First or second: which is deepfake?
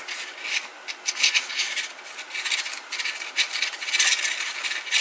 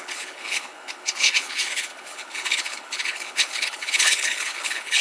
second